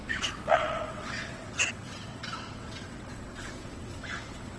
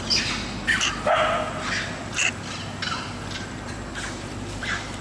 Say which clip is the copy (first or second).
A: first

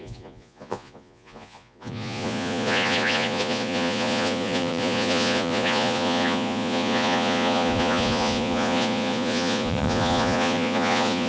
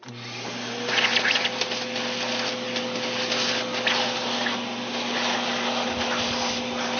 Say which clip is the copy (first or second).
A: first